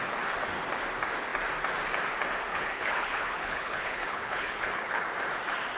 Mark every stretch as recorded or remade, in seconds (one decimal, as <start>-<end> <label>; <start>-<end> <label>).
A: 0.0-2.5 recorded; 2.5-5.0 remade; 5.0-5.8 recorded